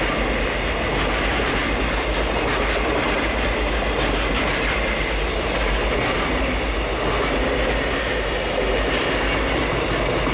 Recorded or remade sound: recorded